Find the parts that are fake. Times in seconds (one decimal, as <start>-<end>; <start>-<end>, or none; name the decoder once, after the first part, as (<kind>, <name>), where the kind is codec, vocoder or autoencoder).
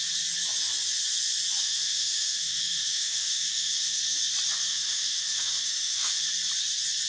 1.6-4.0 (autoencoder, DAC-VAE); 4.7-6.2